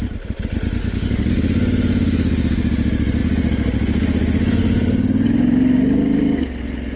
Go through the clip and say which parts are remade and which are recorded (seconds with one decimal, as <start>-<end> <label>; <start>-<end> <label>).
0.0-0.8 recorded; 0.8-1.3 remade; 1.3-7.0 recorded